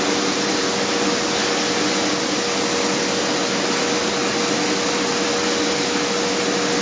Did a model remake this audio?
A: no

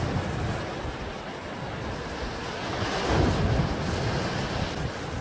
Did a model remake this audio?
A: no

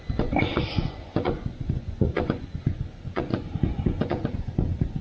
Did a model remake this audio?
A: yes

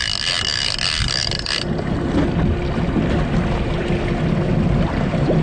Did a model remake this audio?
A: no